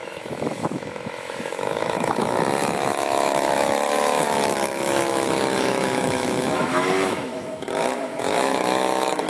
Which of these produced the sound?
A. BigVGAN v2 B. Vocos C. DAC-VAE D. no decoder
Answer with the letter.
C